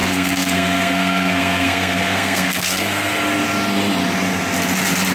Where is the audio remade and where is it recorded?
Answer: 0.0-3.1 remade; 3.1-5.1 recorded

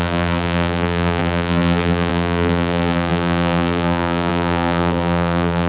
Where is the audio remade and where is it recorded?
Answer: 0.0-5.7 remade